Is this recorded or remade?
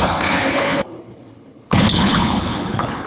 remade